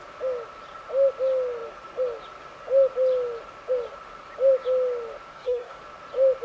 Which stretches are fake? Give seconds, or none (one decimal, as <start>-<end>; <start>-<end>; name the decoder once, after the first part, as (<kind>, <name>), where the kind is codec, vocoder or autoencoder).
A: 5.3-5.8 (codec, SNAC)